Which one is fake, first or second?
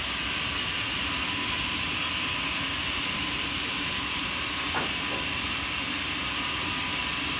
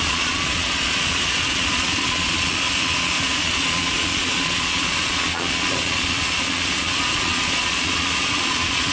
second